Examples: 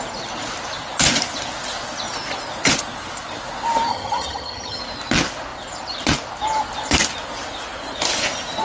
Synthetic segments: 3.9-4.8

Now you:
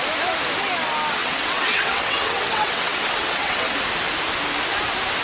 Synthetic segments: 1.2-3.7

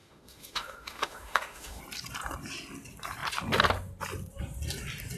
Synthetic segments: 0.0-1.8

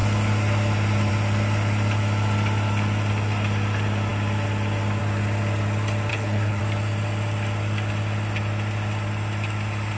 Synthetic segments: 6.1-6.6

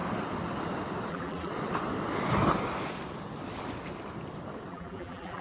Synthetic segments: 1.1-1.5; 4.7-5.4

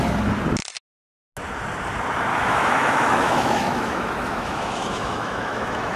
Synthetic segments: 2.3-6.0

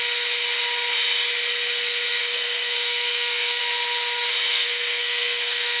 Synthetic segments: 2.2-3.6; 4.5-5.8